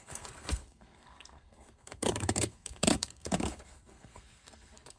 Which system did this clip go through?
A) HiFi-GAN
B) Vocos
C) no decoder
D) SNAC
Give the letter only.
D